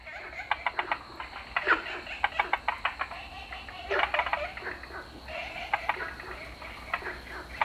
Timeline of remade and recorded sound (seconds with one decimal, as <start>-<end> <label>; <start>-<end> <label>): 0.0-7.6 recorded